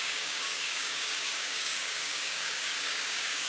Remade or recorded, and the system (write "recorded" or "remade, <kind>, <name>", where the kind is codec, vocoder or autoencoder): remade, codec, DAC